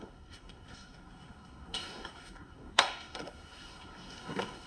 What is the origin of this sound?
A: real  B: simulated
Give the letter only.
B